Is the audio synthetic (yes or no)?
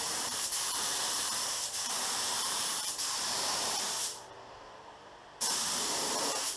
yes